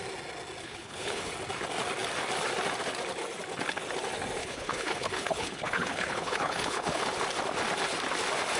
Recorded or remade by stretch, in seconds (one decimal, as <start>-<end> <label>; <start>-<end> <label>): 0.0-0.6 recorded; 0.6-1.3 remade; 1.3-4.4 recorded; 4.4-7.0 remade; 7.0-8.6 recorded